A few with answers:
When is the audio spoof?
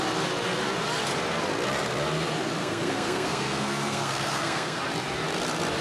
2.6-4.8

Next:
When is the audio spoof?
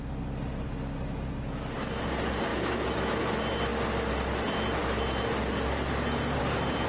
2.5-3.2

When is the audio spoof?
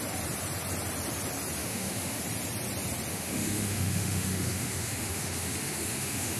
1.6-2.2; 3.1-6.4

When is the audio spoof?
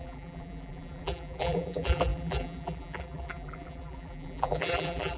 0.0-5.2